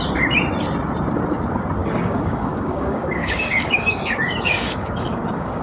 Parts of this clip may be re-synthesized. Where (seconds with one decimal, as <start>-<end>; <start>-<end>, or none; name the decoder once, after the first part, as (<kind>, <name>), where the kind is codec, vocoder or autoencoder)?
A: 1.8-5.6 (codec, DAC)